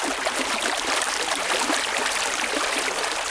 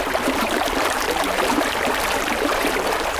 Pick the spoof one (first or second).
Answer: second